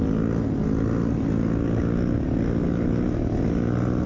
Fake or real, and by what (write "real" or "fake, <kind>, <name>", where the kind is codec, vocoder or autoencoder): real